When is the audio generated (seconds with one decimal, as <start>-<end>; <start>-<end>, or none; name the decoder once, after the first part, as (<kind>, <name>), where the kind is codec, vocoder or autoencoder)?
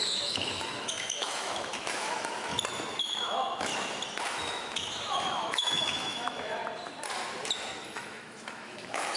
0.0-2.5 (autoencoder, DAC-VAE); 3.0-3.7; 4.3-6.6; 7.8-9.2